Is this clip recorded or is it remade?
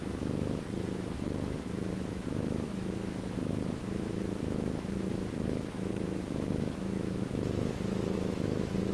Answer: remade